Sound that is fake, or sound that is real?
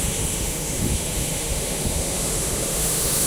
fake